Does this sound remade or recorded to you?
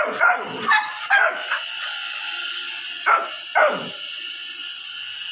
remade